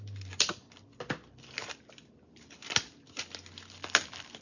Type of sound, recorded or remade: recorded